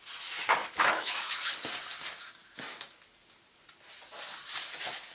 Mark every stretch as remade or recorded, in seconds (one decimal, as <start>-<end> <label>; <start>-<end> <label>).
0.0-0.6 recorded; 0.6-1.5 remade; 1.5-5.1 recorded